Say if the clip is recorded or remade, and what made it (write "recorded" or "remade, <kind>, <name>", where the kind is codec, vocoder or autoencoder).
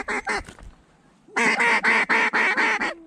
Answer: recorded